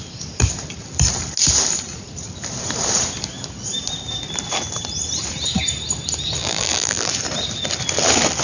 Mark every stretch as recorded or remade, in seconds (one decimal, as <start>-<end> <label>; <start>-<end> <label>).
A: 0.0-6.4 recorded; 6.4-7.1 remade; 7.1-8.4 recorded

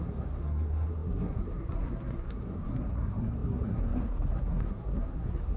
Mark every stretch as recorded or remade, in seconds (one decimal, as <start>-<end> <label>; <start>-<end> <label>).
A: 0.0-5.6 remade

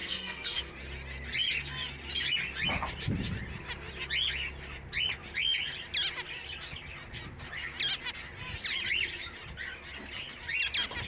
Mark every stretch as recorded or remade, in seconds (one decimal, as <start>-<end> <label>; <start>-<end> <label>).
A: 0.0-0.7 remade; 0.7-11.1 recorded

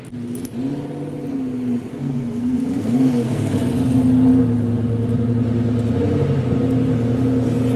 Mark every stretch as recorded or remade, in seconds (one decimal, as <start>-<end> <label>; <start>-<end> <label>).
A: 0.0-1.9 recorded; 1.9-3.6 remade; 3.6-7.8 recorded